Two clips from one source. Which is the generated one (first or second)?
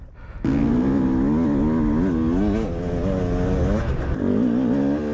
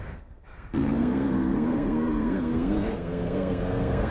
second